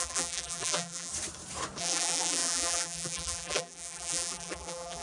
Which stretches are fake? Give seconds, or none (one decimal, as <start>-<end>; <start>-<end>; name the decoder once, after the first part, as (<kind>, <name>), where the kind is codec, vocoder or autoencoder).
0.0-1.1 (vocoder, BigVGAN v2); 1.8-5.0